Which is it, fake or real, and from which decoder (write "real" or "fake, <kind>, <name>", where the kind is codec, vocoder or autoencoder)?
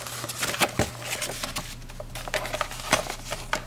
real